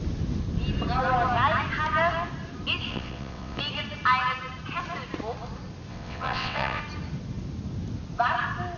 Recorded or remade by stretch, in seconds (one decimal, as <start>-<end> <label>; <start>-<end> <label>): 0.0-2.9 recorded; 2.9-3.6 remade; 3.6-5.9 recorded; 5.9-6.8 remade; 6.8-8.8 recorded